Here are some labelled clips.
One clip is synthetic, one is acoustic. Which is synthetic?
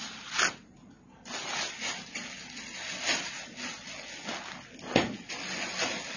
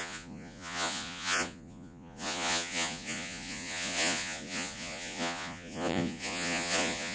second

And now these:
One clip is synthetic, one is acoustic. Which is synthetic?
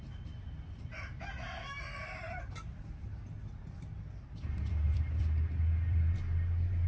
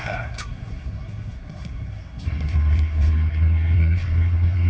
second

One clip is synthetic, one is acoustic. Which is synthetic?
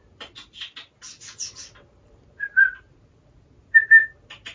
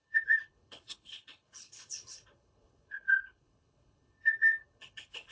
second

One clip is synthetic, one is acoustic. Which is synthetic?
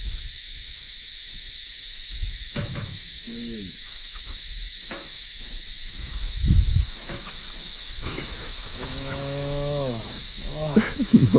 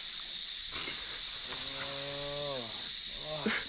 first